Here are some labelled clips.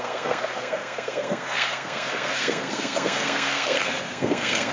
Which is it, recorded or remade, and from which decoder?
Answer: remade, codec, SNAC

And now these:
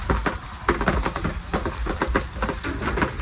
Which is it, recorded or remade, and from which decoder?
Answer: recorded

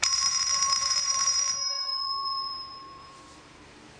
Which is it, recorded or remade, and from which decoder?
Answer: remade, vocoder, BigVGAN v2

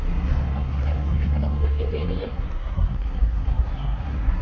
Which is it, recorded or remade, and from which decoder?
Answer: remade, codec, SNAC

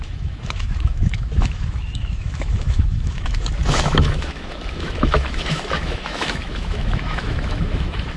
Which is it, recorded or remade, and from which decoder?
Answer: remade, autoencoder, DAC-VAE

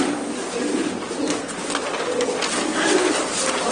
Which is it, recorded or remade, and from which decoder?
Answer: recorded